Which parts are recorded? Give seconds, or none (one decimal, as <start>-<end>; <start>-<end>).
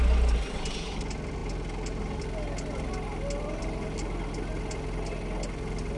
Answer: 0.0-6.0